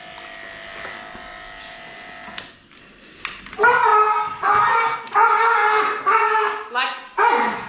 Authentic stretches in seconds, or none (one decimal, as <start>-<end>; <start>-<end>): 0.0-5.6; 6.7-7.7